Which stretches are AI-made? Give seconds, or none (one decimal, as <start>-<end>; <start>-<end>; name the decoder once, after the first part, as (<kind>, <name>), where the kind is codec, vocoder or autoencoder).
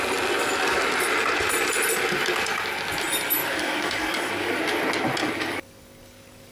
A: 3.4-4.6 (codec, DAC); 5.2-6.5